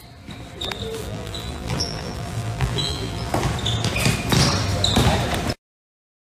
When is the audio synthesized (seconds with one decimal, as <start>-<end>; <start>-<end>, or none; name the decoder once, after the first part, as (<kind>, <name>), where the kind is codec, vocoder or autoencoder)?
1.0-3.3 (vocoder, BigVGAN v2)